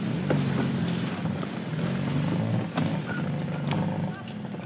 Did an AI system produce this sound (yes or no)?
no